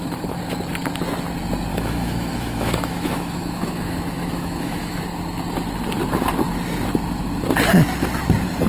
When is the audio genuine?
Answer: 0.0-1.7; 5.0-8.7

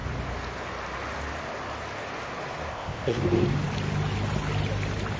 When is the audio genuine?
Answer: 0.0-2.7; 3.2-5.2

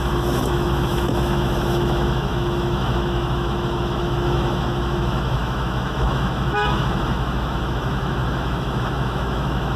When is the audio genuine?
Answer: none

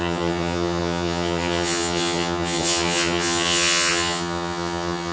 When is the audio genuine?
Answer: none

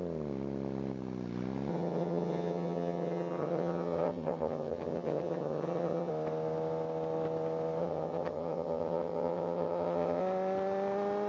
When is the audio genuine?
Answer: 0.0-1.7; 6.1-7.8; 10.2-11.3

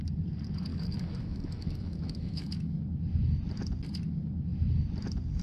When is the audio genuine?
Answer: 0.0-0.7; 2.8-5.4